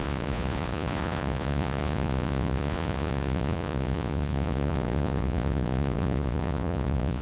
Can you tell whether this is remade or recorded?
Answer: remade